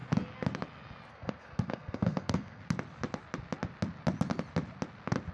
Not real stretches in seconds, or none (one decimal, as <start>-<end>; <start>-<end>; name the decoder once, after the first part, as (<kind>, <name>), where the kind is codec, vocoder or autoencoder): 1.1-2.6 (codec, SNAC)